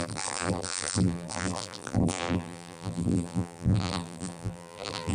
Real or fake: fake